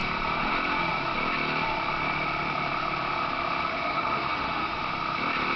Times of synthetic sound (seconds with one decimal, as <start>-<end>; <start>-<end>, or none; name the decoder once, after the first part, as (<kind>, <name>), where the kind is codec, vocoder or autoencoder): 3.7-4.8 (autoencoder, DAC-VAE)

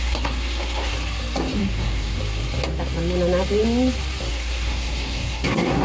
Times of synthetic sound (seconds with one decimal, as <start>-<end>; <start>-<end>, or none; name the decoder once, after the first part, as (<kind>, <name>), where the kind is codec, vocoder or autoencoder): 0.0-0.9 (codec, SNAC); 1.6-2.2; 4.3-5.8

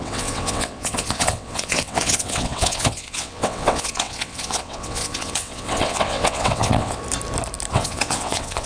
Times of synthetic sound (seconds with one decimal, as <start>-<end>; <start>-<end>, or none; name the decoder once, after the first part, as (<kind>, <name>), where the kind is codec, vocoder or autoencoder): 0.0-7.0 (vocoder, WaveNeXt); 7.7-8.7

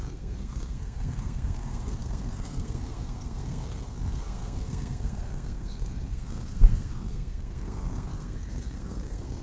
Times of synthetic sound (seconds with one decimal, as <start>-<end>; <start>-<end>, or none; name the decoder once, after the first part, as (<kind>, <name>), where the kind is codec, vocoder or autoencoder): 0.0-9.4 (codec, SNAC)

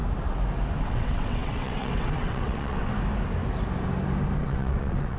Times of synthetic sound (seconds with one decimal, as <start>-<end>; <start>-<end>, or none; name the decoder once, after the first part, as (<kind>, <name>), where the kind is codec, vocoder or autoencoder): 0.8-2.9 (vocoder, WaveNeXt); 4.4-5.2

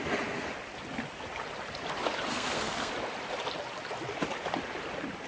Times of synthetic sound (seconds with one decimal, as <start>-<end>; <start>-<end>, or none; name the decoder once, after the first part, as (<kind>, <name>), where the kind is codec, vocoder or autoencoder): 2.3-2.9 (codec, SNAC)